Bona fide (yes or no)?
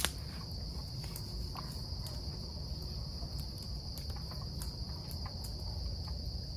yes